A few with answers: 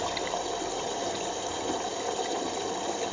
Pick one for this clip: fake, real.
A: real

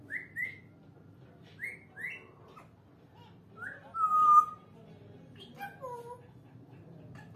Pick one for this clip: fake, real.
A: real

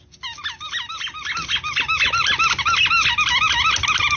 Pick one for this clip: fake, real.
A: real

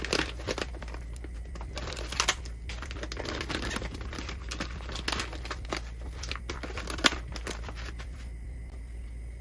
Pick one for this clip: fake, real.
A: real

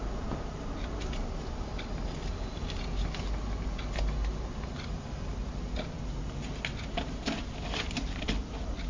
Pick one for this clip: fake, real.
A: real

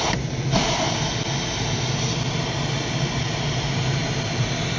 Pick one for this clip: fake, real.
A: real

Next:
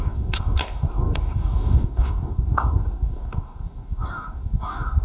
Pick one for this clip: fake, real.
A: fake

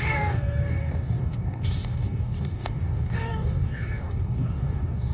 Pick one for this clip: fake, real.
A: fake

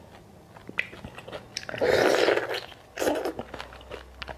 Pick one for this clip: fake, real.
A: real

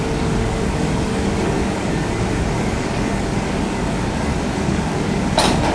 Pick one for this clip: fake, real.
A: fake